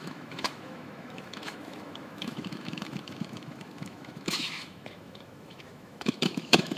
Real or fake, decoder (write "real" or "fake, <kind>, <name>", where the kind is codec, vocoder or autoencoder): fake, autoencoder, DAC-VAE